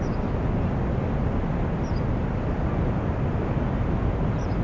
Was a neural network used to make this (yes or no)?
no